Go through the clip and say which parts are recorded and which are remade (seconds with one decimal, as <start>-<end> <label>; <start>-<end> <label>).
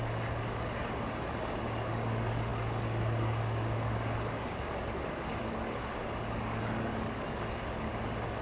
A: 0.0-8.4 remade